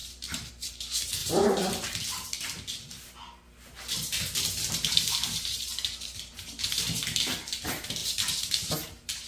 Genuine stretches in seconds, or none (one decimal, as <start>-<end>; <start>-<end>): 0.5-1.2; 2.0-8.0; 8.5-9.3